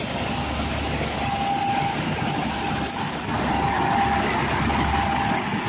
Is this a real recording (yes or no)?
yes